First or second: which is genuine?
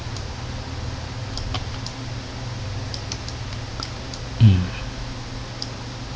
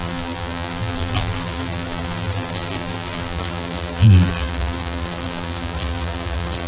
first